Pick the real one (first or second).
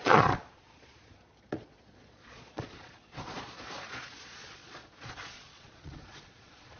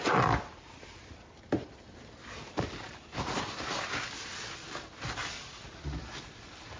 second